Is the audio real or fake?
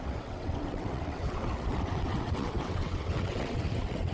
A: fake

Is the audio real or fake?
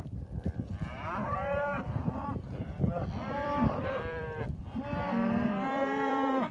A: fake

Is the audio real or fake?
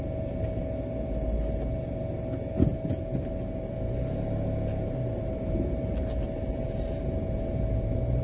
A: real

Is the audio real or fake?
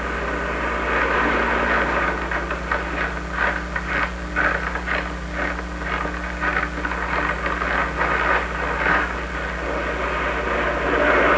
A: real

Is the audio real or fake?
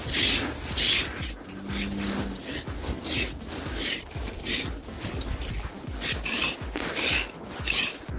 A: real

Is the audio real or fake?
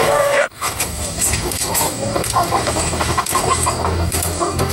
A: fake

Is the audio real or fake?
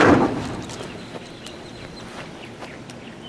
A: real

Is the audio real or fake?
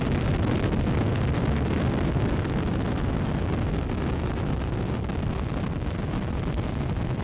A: real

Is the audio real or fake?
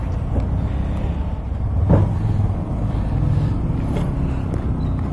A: real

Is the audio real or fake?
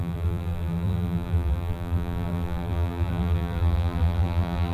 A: fake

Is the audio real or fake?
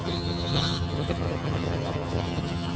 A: fake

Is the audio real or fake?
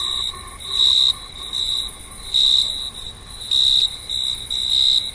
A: real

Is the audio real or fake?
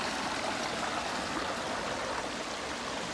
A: real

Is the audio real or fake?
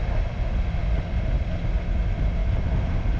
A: real